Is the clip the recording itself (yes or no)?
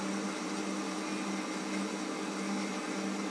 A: yes